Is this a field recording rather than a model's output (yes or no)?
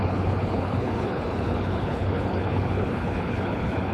no